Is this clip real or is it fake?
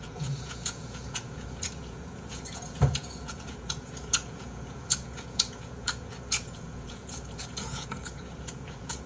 fake